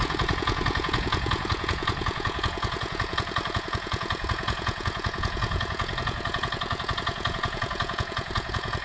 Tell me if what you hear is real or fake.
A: fake